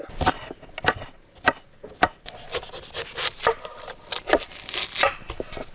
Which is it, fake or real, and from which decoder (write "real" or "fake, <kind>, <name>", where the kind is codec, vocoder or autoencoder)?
real